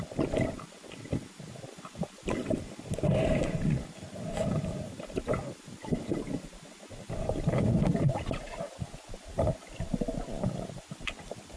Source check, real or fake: real